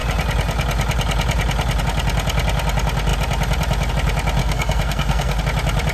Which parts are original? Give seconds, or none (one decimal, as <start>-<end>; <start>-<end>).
0.0-4.4; 5.4-5.9